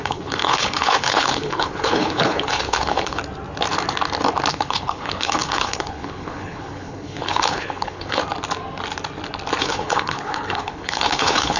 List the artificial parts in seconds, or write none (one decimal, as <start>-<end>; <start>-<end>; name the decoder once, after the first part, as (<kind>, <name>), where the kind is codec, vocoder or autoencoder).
0.0-3.2 (codec, HILCodec); 4.5-8.2; 9.6-11.6